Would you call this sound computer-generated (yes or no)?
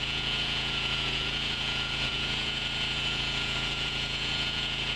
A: yes